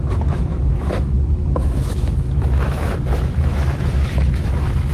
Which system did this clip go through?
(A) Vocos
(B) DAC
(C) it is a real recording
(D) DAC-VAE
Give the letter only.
D